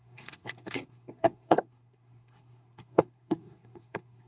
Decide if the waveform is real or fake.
fake